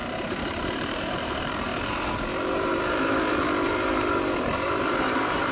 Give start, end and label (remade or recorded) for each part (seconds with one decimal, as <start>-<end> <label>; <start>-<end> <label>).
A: 0.0-0.6 recorded; 0.6-1.7 remade; 1.7-5.0 recorded; 5.0-5.5 remade